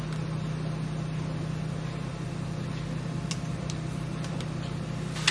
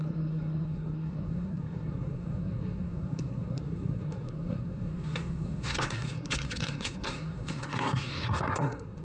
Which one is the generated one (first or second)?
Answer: second